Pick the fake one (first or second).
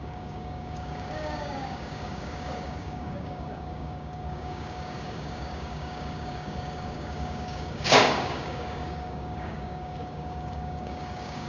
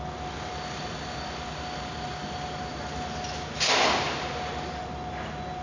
first